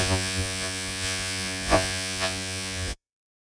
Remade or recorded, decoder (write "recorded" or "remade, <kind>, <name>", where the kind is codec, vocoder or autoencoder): remade, vocoder, Vocos